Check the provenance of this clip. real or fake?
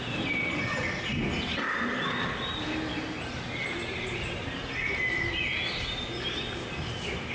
real